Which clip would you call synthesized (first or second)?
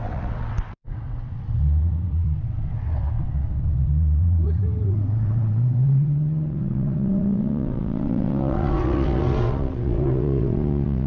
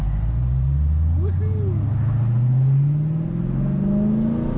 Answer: first